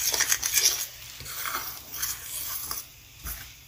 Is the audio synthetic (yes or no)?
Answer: no